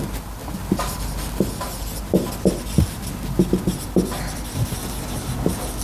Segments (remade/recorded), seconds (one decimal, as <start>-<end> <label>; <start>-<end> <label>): 0.0-5.8 recorded